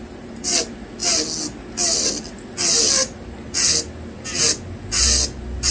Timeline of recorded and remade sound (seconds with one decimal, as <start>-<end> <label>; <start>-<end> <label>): 0.0-5.7 recorded